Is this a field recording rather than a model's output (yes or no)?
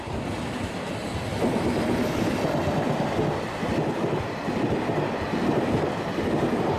yes